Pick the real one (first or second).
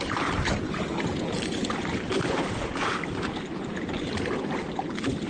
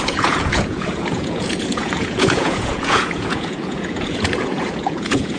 first